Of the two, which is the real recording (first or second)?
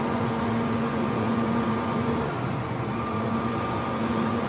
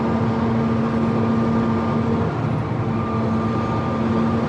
second